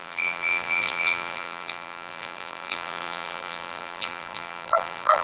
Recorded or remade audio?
remade